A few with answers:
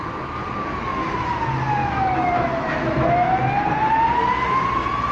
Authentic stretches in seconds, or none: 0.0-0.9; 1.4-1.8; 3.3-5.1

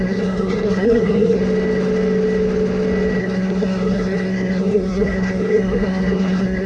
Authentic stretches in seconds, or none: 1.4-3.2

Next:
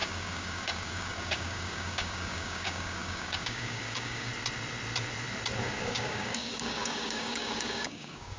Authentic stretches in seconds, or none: 4.3-5.6

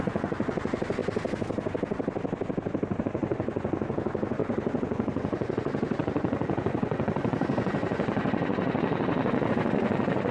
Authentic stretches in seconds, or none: 1.0-3.0

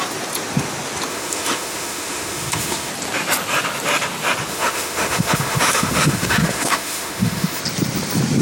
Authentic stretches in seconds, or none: 0.0-1.1; 2.9-4.5; 7.6-8.4